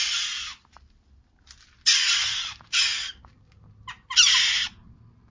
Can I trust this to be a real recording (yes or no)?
yes